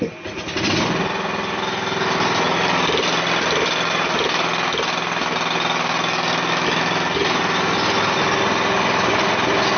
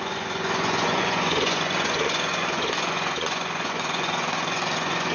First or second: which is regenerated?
second